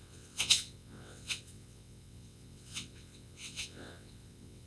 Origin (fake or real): fake